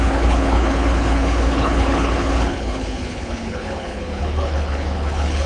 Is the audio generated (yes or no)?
yes